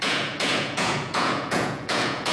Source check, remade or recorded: remade